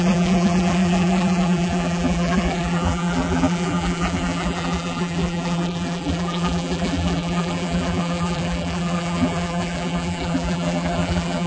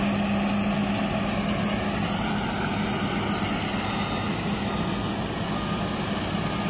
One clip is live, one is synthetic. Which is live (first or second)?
second